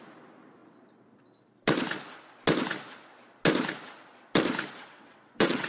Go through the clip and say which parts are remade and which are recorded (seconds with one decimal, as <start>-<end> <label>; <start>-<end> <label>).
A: 0.0-4.8 recorded; 4.8-5.7 remade